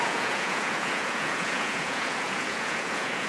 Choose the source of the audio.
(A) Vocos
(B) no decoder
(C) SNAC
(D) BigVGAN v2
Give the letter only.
A